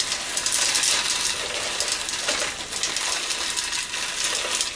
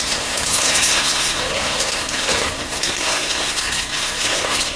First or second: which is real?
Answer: first